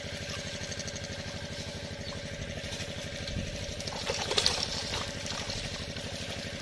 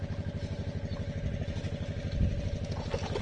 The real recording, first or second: second